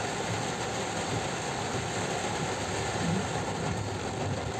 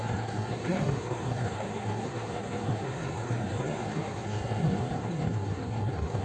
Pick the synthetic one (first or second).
second